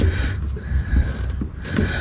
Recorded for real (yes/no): yes